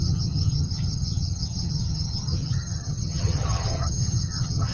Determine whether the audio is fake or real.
fake